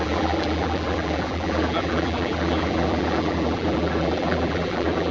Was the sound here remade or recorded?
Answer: remade